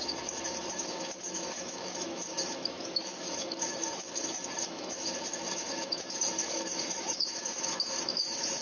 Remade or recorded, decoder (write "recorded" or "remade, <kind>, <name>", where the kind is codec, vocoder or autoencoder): remade, autoencoder, DAC-VAE